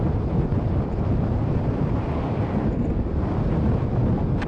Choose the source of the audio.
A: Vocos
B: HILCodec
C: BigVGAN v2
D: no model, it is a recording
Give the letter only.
D